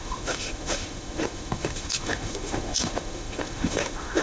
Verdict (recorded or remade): remade